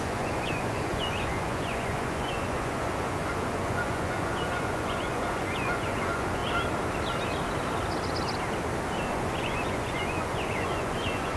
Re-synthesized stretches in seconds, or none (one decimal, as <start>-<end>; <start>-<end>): 0.0-6.4; 9.1-11.4